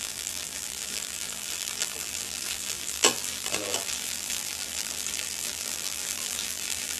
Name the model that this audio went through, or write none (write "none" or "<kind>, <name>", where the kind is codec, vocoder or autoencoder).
vocoder, BigVGAN v2